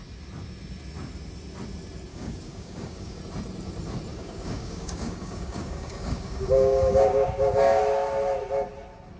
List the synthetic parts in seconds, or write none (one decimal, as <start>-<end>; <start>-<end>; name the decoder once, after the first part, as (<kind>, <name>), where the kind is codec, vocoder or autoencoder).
2.1-3.2 (codec, DAC); 4.1-7.8